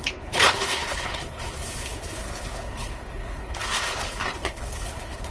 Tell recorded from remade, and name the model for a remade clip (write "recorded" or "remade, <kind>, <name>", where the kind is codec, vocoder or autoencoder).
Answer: remade, codec, HILCodec